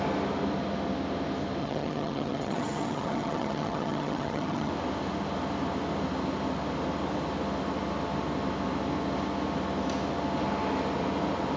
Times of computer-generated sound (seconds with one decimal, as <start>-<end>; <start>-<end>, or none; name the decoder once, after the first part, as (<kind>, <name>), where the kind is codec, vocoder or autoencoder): 1.6-4.7 (vocoder, HiFi-GAN)

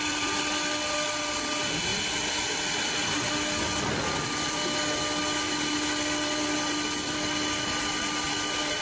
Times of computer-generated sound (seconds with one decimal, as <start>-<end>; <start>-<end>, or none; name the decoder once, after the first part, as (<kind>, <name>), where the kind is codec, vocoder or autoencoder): none